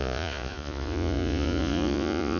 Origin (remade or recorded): remade